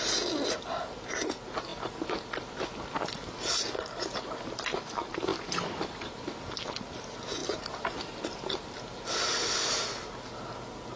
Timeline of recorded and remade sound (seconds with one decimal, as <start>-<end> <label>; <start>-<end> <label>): 0.0-5.3 recorded; 5.3-6.3 remade; 6.3-7.4 recorded; 7.4-8.5 remade; 8.5-11.0 recorded